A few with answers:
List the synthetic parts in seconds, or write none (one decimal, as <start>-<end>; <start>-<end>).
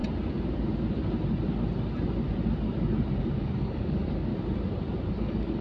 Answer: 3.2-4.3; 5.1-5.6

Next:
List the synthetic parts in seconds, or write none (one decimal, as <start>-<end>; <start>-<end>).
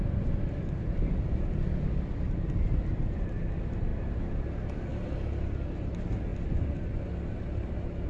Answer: none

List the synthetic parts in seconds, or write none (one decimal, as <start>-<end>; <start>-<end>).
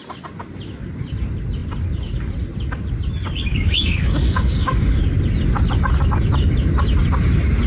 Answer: 3.5-5.0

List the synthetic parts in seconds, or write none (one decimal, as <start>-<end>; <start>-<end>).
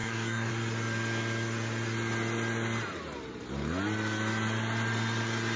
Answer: 0.0-0.5